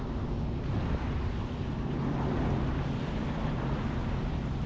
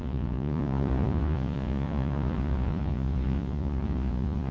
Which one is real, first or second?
first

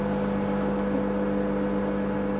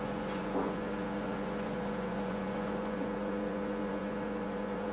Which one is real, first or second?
first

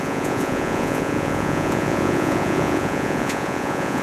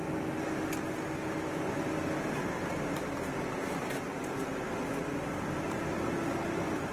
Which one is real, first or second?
second